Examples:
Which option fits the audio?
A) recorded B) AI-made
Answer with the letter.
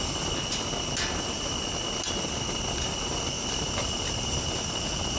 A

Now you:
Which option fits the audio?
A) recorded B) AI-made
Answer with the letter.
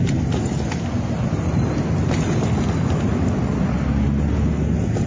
A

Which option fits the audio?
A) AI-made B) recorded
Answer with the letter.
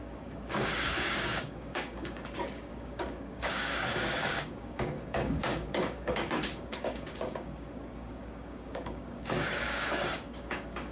A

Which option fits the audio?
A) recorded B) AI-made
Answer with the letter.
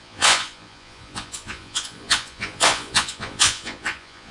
B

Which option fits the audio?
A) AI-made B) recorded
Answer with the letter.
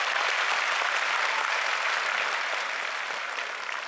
B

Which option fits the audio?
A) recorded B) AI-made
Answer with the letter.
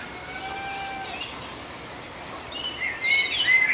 A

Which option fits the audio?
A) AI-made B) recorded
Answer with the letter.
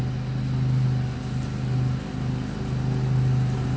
B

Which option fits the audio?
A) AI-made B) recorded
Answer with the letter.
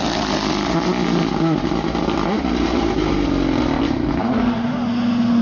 B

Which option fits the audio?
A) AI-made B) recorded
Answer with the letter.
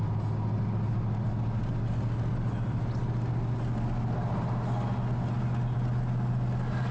B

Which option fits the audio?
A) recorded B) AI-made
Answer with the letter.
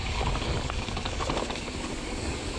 B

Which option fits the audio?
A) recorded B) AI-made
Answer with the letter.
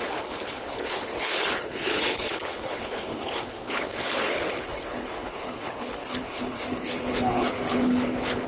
B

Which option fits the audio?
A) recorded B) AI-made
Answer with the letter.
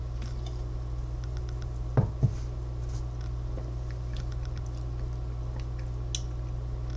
A